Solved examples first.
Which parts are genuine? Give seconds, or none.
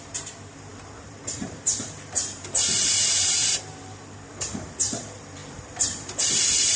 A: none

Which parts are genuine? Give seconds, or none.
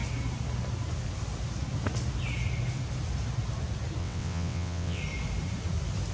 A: 0.0-4.0; 5.0-6.1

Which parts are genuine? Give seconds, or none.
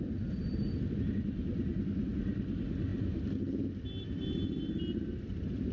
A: 0.0-5.7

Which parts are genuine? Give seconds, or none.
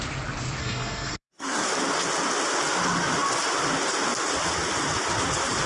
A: 0.0-0.6; 1.7-5.7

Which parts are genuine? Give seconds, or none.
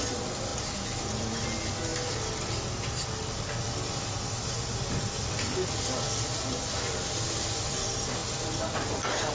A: 0.0-9.3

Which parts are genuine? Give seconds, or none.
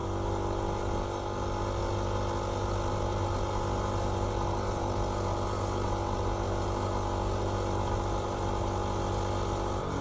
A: 0.0-10.0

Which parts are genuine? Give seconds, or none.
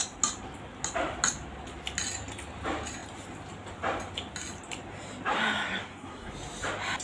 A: 0.0-5.8; 6.3-7.0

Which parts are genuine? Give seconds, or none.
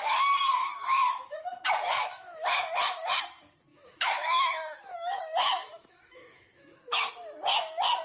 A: 0.0-0.6; 1.4-2.1; 3.2-3.7; 7.1-8.0